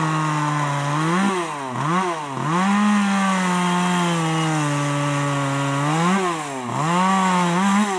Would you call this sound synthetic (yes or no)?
no